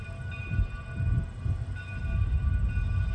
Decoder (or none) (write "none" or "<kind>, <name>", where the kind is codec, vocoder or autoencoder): none